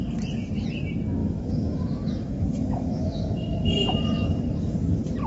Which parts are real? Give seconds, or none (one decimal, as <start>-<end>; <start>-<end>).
0.0-1.2; 4.4-5.3